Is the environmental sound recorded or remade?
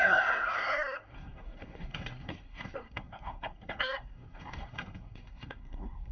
remade